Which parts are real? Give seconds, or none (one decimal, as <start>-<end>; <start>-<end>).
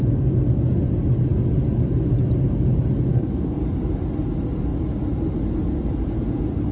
0.0-3.1; 3.6-6.7